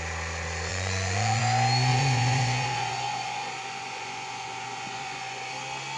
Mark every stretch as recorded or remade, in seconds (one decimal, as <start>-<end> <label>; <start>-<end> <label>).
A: 0.0-0.7 recorded; 0.7-1.4 remade; 1.4-1.9 recorded; 1.9-5.5 remade; 5.5-6.0 recorded